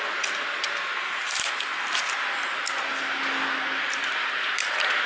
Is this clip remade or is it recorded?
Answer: recorded